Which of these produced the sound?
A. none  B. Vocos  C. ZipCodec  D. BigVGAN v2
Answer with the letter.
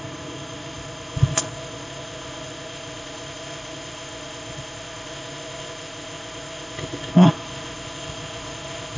C